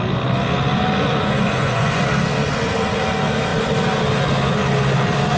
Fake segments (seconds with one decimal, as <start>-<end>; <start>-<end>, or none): 1.1-2.0